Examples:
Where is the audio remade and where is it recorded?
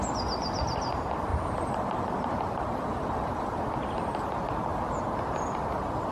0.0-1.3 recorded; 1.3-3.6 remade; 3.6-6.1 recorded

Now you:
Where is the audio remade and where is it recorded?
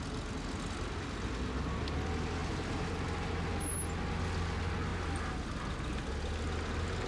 0.0-7.1 recorded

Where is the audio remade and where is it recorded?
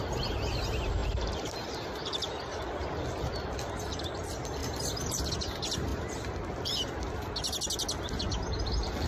0.0-1.0 recorded; 1.0-2.4 remade; 2.4-4.6 recorded; 4.6-5.3 remade; 5.3-9.1 recorded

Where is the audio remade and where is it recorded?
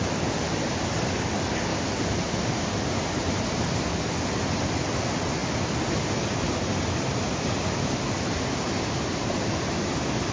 0.0-1.7 recorded; 1.7-3.8 remade; 3.8-10.3 recorded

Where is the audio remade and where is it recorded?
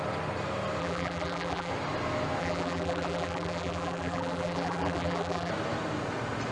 0.0-0.8 recorded; 0.8-1.7 remade; 1.7-2.4 recorded; 2.4-5.5 remade; 5.5-6.5 recorded